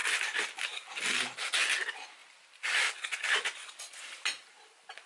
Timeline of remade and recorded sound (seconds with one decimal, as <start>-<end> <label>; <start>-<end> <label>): 0.0-5.1 recorded